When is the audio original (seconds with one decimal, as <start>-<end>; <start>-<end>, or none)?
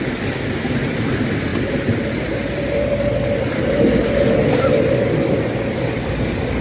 0.0-6.6